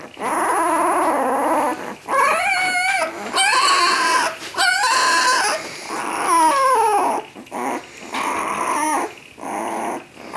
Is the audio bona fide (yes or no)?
yes